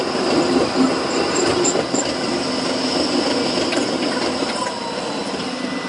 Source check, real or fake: real